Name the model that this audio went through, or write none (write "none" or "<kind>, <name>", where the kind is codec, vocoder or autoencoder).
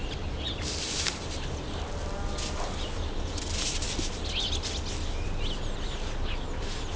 none